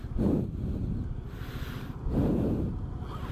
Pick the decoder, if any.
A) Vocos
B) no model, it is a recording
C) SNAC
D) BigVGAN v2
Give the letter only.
B